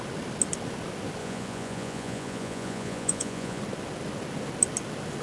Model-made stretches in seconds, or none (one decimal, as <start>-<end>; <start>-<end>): 1.2-3.6